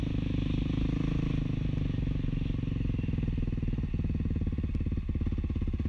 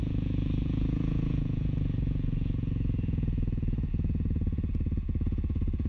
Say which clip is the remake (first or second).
second